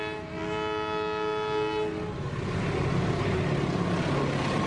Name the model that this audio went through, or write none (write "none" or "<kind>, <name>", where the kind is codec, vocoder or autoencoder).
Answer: none